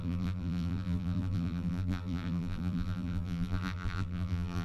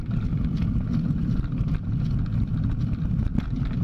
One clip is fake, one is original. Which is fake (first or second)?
first